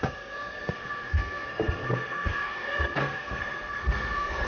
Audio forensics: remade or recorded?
remade